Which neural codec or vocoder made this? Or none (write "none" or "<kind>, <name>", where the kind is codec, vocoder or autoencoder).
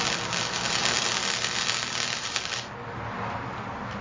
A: none